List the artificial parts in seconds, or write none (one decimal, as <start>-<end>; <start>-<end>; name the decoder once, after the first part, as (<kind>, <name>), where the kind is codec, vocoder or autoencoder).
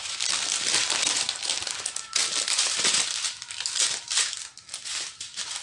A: none